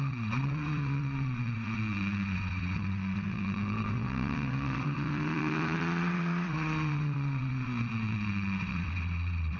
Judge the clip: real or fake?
fake